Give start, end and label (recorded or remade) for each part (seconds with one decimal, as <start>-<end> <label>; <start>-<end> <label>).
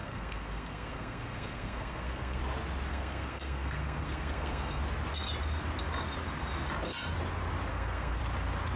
0.0-2.4 remade; 2.4-2.9 recorded; 2.9-4.8 remade; 4.8-7.7 recorded; 7.7-8.2 remade; 8.2-8.8 recorded